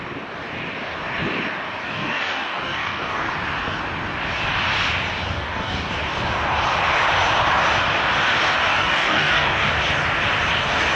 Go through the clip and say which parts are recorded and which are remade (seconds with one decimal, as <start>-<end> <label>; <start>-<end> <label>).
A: 0.0-1.8 recorded; 1.8-3.3 remade; 3.3-5.3 recorded; 5.3-5.9 remade; 5.9-8.7 recorded; 8.7-9.7 remade; 9.7-11.0 recorded